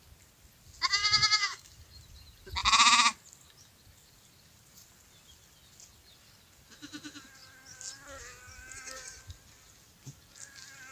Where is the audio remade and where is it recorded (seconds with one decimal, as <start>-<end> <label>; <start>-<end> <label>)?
0.0-1.0 recorded; 1.0-1.7 remade; 1.7-10.9 recorded